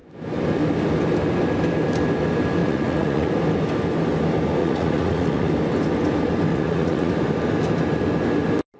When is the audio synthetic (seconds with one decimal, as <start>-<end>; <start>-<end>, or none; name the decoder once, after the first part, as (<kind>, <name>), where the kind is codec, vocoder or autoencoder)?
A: 2.6-3.3 (vocoder, Vocos); 4.6-5.5; 6.5-7.1